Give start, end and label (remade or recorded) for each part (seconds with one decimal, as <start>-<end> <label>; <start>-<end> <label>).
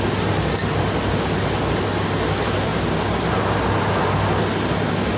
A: 0.0-5.2 recorded